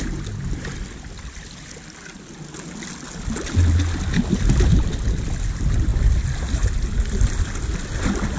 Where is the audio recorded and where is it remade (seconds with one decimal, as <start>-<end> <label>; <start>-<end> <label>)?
0.0-8.4 recorded